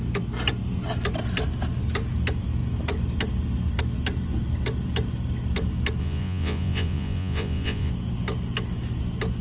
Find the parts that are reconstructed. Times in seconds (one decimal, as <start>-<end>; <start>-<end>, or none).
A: 6.0-7.9